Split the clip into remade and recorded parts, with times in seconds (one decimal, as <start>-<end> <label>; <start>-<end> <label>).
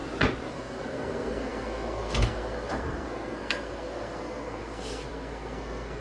0.0-0.5 recorded; 0.5-6.0 remade